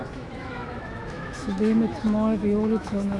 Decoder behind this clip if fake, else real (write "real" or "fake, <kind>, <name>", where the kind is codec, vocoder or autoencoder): fake, autoencoder, DAC-VAE